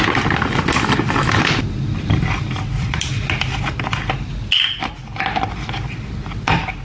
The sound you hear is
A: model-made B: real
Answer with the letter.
B